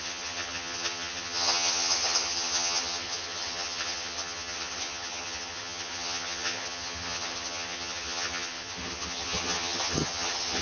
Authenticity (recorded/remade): remade